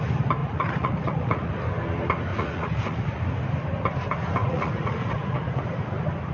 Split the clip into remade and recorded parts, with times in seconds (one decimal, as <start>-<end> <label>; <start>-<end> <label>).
0.0-0.4 recorded; 0.4-1.5 remade; 1.5-2.3 recorded; 2.3-3.2 remade; 3.2-4.4 recorded; 4.4-5.6 remade; 5.6-6.3 recorded